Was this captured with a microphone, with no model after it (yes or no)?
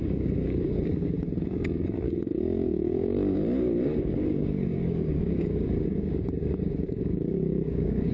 no